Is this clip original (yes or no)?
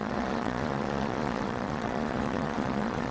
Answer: no